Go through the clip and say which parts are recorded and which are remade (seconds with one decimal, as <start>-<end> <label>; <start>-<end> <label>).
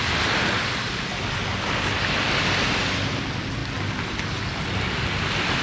0.0-5.6 recorded